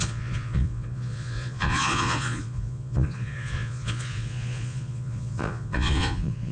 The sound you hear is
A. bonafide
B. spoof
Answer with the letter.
B